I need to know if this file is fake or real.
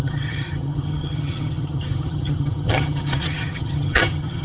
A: fake